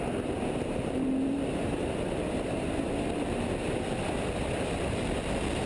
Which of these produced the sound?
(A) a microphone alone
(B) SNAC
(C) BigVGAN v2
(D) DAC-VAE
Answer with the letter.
C